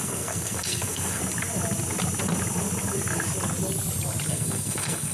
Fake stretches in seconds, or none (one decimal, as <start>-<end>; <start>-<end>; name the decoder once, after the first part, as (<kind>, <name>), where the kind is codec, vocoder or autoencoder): 0.0-1.2 (codec, SNAC); 4.3-5.1